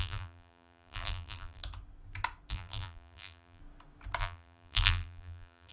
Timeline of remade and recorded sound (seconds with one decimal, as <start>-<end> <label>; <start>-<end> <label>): 0.0-1.6 remade; 1.6-2.5 recorded; 2.5-3.6 remade; 3.6-4.2 recorded; 4.2-5.7 remade